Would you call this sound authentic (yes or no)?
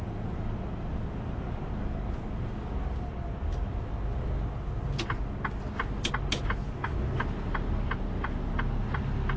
yes